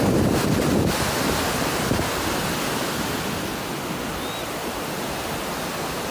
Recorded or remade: recorded